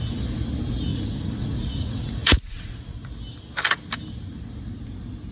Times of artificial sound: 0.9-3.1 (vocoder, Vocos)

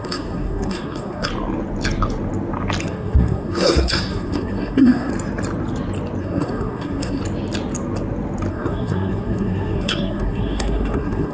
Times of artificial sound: 0.0-1.3 (codec, SNAC); 2.8-5.1; 6.2-7.2; 8.5-11.3

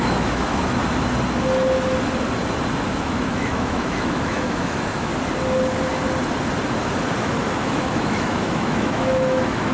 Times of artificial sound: 0.0-0.8 (autoencoder, DAC-VAE); 3.0-5.1; 7.2-9.7

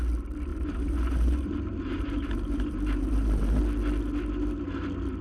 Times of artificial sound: 0.5-3.6 (vocoder, BigVGAN v2)

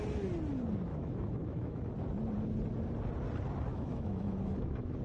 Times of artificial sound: 0.9-1.9 (autoencoder, DAC-VAE); 3.7-5.0

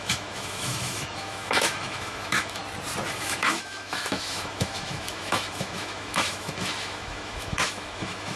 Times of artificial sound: 0.0-2.6 (autoencoder, DAC-VAE); 3.1-8.4